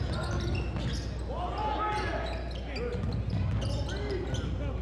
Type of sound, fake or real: real